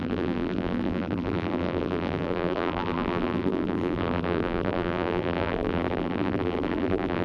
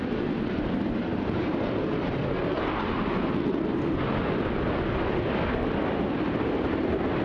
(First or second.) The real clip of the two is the second